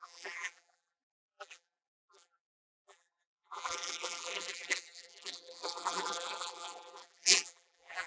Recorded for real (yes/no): no